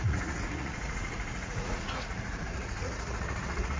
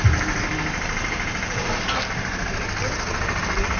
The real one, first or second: second